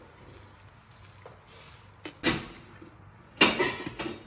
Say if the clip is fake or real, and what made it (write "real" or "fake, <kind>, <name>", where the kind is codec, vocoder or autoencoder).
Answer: real